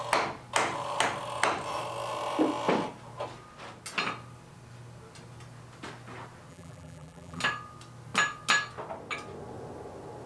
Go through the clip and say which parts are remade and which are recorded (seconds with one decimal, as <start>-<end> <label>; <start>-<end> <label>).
0.0-6.5 recorded; 6.5-7.4 remade; 7.4-10.3 recorded